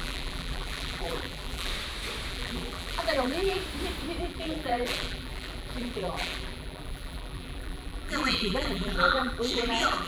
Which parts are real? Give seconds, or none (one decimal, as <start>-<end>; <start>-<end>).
1.7-2.3; 3.6-4.2